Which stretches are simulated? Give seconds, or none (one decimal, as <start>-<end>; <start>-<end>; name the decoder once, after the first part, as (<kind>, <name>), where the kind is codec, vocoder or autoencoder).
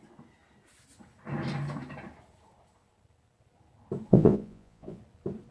4.1-5.0 (vocoder, Vocos)